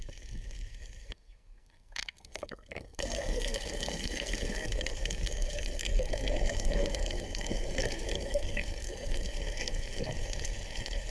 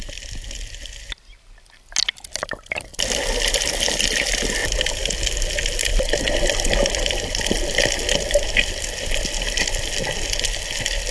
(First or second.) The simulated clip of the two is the first